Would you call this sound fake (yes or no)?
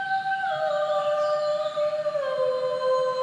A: no